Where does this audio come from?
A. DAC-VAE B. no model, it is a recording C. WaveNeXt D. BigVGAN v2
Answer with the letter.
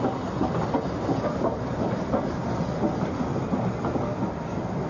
B